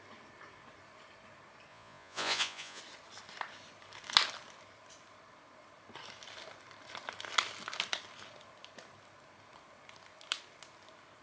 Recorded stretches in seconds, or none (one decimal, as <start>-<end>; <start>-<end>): 0.0-1.7; 2.8-11.2